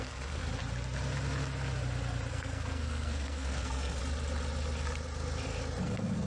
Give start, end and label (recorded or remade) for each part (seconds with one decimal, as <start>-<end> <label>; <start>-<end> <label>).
0.0-0.4 remade; 0.4-2.3 recorded; 2.3-4.0 remade; 4.0-5.8 recorded; 5.8-6.3 remade